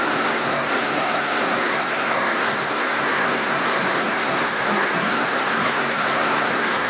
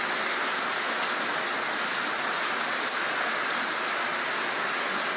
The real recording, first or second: second